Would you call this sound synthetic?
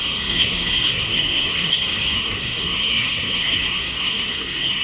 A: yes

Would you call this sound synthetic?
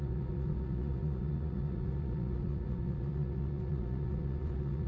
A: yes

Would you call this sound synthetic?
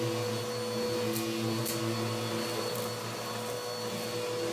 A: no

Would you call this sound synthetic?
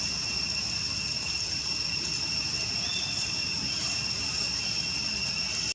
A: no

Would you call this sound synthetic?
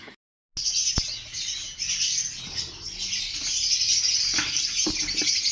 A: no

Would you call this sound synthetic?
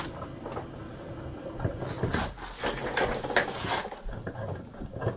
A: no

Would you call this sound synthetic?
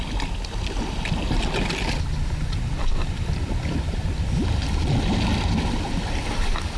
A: no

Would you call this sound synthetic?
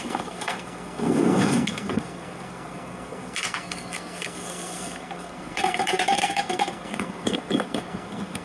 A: yes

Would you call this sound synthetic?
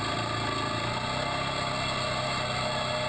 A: no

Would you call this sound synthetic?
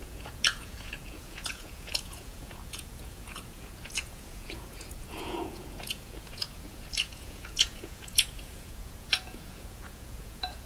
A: yes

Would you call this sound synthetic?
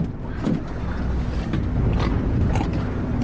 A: no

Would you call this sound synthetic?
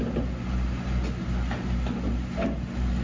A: no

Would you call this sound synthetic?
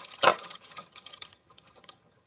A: yes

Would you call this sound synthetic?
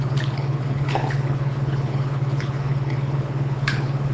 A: yes